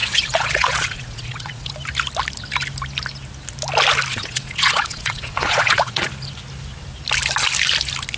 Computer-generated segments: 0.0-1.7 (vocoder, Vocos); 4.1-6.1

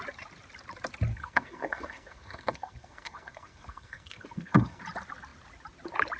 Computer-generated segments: 1.1-4.8 (codec, SNAC)

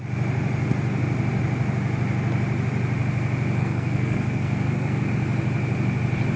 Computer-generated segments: 3.6-5.1 (codec, SNAC)

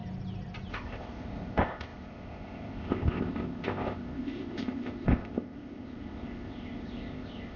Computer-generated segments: 0.7-7.6 (codec, ZipCodec)

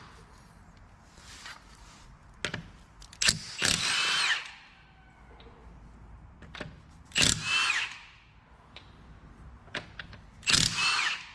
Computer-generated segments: none

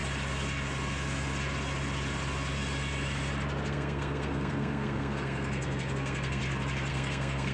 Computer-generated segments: 3.7-6.4 (codec, SNAC); 6.9-7.5

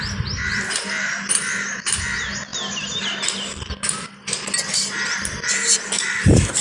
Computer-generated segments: none

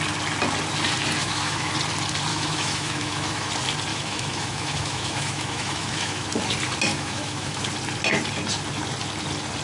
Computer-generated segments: 1.2-1.7 (autoencoder, DAC-VAE); 2.3-3.5; 3.9-6.3; 6.9-7.6